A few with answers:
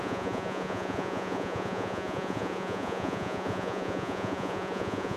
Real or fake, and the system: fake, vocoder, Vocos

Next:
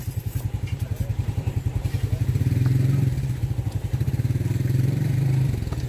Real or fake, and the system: fake, vocoder, BigVGAN v2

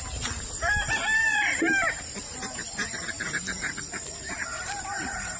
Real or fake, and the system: fake, vocoder, BigVGAN v2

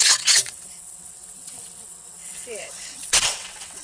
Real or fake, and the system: fake, vocoder, WaveNeXt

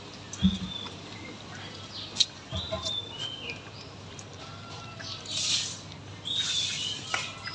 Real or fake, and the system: real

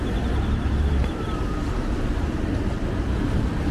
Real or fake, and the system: fake, vocoder, BigVGAN v2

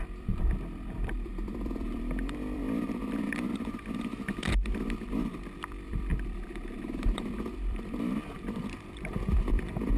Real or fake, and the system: fake, vocoder, BigVGAN v2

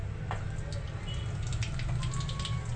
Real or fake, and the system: real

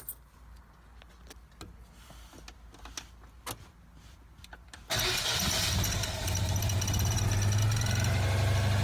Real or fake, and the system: real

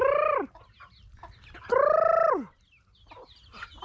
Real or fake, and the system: real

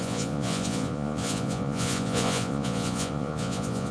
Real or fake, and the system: fake, vocoder, Vocos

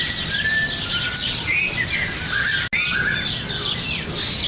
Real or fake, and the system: real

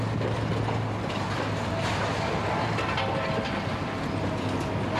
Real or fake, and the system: real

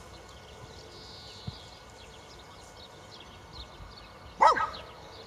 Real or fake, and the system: real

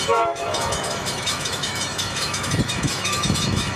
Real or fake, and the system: fake, autoencoder, DAC-VAE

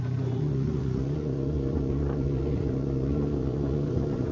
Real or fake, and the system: fake, vocoder, Vocos